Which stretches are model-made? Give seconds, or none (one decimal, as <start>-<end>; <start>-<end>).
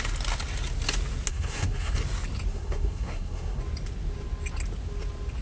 1.3-2.0; 2.5-3.6